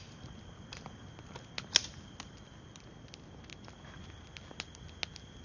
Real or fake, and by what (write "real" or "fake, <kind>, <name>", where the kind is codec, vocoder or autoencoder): real